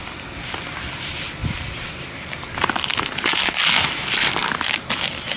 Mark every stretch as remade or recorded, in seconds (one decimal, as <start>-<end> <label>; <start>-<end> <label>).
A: 0.0-5.4 recorded